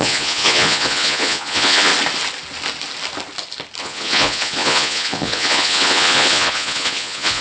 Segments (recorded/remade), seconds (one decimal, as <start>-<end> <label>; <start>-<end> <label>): 0.0-1.9 remade; 1.9-3.8 recorded; 3.8-7.4 remade